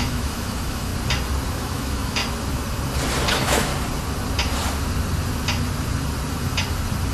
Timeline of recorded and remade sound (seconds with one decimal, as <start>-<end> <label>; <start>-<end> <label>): 0.0-0.9 remade; 0.9-1.5 recorded; 1.5-2.2 remade; 2.2-3.3 recorded; 3.3-3.7 remade; 3.7-7.1 recorded